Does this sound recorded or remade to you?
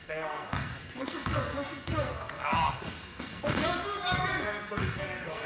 remade